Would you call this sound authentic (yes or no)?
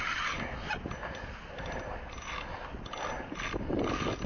yes